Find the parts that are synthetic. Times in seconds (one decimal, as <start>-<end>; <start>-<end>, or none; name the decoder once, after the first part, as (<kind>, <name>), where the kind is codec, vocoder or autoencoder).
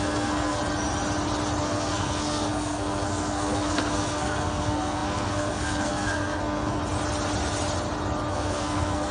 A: 0.0-0.6 (codec, SNAC); 1.6-6.8; 8.3-9.1